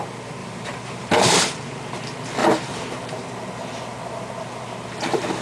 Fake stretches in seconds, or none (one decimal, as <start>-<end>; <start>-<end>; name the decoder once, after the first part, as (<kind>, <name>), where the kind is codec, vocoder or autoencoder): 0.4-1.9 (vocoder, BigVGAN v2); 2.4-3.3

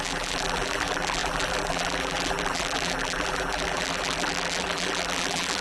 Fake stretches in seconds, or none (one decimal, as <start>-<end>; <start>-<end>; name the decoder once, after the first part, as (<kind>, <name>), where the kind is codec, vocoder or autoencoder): 0.0-5.6 (vocoder, BigVGAN v2)

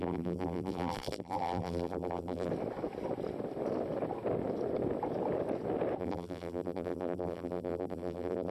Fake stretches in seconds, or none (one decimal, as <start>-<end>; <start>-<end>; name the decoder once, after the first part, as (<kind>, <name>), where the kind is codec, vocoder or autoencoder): 0.0-2.5 (vocoder, BigVGAN v2); 6.0-8.5